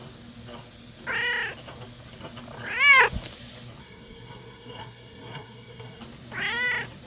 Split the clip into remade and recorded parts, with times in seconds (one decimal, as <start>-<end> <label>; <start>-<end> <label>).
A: 0.0-3.8 recorded; 3.8-6.0 remade; 6.0-7.1 recorded